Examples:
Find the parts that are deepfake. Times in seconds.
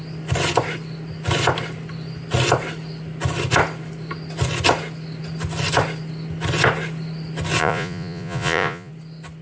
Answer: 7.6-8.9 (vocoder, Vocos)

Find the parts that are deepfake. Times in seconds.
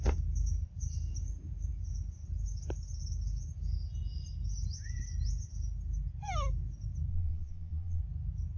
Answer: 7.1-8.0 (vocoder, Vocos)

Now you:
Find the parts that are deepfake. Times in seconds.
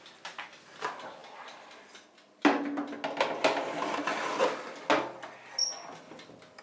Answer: none